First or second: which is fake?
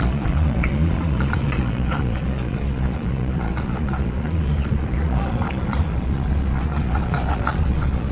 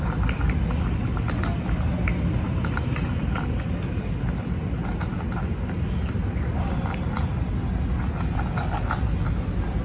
first